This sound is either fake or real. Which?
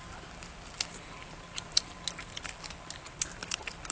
real